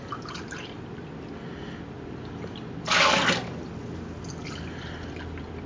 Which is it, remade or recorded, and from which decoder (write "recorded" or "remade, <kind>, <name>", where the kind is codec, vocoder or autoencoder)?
recorded